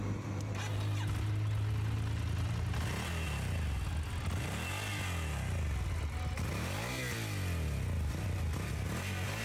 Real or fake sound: real